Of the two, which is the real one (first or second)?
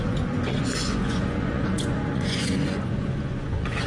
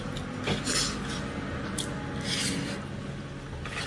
second